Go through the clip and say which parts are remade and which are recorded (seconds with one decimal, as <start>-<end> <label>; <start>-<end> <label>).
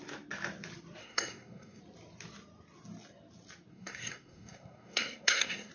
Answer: 0.0-1.0 recorded; 1.0-1.8 remade; 1.8-3.7 recorded; 3.7-5.7 remade